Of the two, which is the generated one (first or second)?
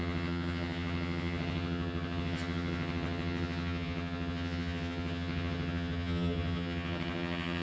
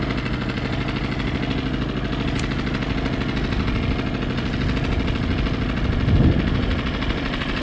first